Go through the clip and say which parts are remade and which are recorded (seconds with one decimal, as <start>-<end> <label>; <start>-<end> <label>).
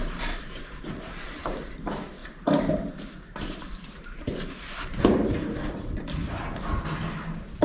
0.0-1.6 remade; 1.6-2.2 recorded; 2.2-6.8 remade; 6.8-7.6 recorded